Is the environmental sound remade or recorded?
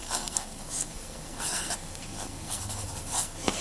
remade